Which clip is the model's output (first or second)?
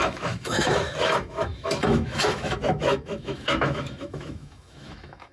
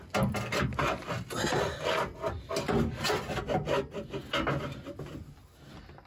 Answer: first